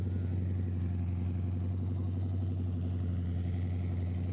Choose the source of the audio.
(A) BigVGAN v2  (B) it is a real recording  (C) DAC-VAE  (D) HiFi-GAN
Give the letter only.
B